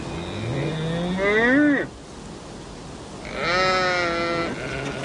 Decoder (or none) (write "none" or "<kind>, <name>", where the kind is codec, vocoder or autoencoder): none